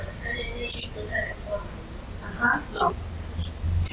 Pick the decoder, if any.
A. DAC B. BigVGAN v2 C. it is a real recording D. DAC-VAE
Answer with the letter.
C